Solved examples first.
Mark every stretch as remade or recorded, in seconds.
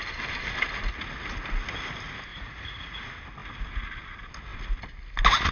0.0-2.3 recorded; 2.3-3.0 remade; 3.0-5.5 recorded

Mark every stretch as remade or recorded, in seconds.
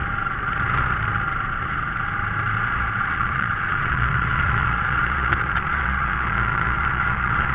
0.0-3.0 recorded; 3.0-7.5 remade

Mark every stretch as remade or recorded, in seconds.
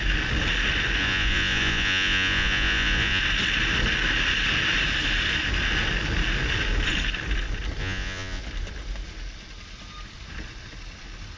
0.0-1.0 recorded; 1.0-3.2 remade; 3.2-7.8 recorded; 7.8-8.4 remade; 8.4-11.4 recorded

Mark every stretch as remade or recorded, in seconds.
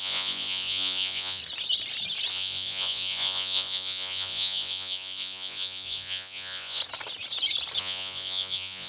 0.0-1.4 remade; 1.4-2.3 recorded; 2.3-6.8 remade; 6.8-7.8 recorded; 7.8-8.9 remade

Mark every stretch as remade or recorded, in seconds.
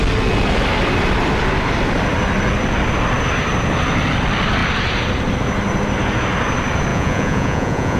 0.0-6.9 recorded; 6.9-8.0 remade